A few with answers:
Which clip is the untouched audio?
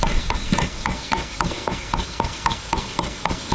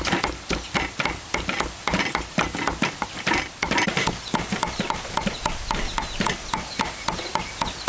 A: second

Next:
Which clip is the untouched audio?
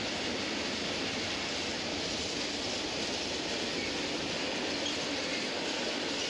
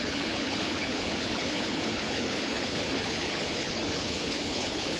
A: first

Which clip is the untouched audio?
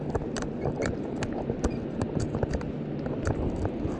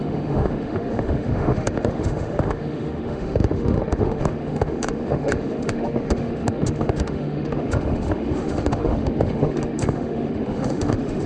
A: first